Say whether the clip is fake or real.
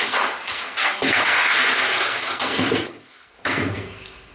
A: fake